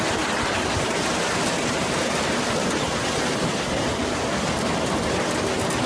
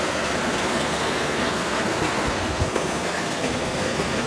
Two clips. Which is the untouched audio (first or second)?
first